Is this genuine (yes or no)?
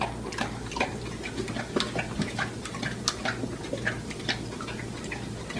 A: yes